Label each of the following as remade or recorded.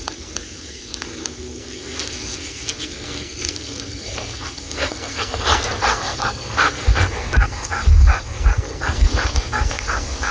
remade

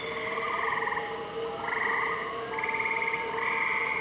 recorded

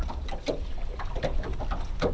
recorded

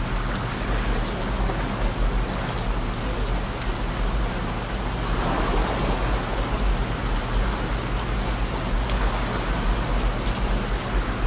recorded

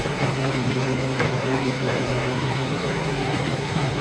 remade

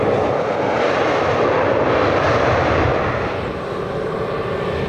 recorded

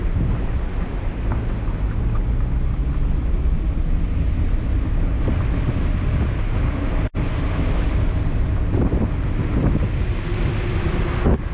recorded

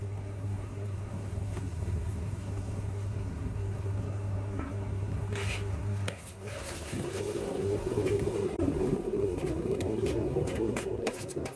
remade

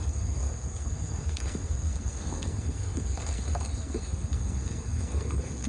remade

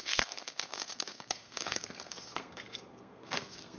remade